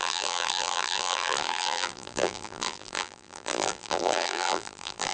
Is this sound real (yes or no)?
no